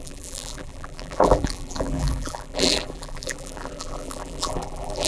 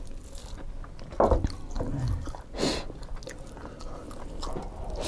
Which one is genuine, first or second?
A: second